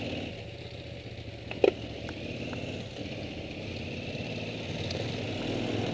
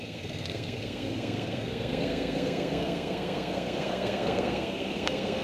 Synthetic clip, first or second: second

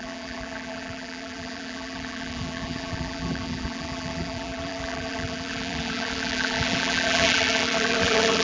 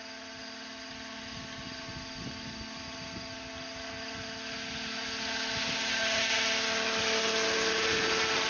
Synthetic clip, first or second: first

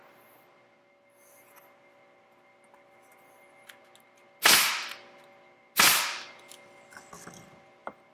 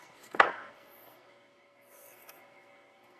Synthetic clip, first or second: second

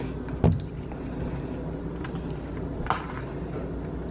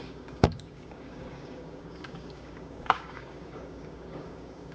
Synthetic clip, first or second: second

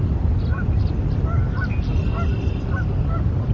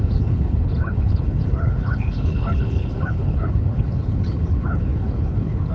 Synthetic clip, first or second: second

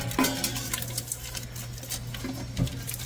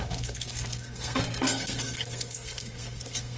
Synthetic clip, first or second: second